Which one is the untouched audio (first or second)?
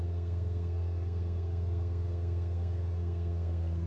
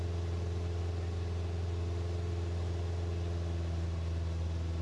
second